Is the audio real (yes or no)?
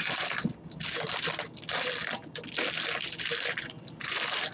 yes